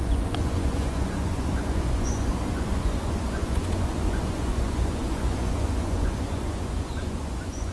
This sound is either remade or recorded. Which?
remade